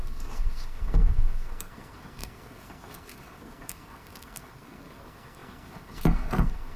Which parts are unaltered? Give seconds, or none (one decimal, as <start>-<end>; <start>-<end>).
none

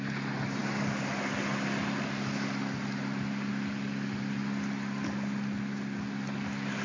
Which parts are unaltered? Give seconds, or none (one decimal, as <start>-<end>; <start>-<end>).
0.0-6.8